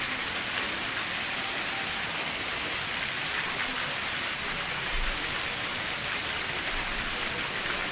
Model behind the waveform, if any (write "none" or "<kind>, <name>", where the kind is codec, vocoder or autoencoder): none